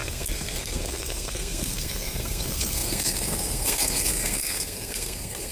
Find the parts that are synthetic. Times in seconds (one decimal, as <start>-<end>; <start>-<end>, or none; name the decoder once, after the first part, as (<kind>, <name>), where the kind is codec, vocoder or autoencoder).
0.0-5.5 (codec, SNAC)